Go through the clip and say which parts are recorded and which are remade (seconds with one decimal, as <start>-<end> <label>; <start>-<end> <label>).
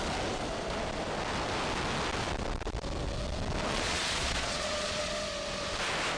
0.0-3.7 recorded; 3.7-5.1 remade; 5.1-6.2 recorded